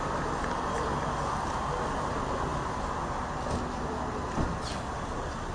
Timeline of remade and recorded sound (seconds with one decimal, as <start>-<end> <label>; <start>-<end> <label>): 0.0-5.5 recorded